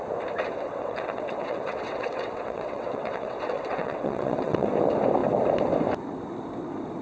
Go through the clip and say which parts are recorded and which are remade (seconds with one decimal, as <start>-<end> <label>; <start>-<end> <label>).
0.0-0.5 recorded; 0.5-4.7 remade; 4.7-7.0 recorded